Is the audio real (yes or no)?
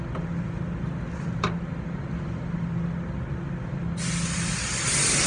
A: yes